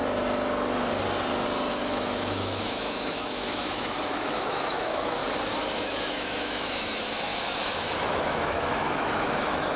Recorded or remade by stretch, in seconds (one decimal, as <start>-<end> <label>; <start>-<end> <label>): 0.0-1.7 recorded; 1.7-5.2 remade; 5.2-5.8 recorded; 5.8-9.8 remade